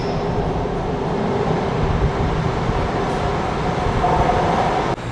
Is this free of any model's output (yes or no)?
yes